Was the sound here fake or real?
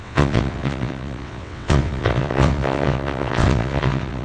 fake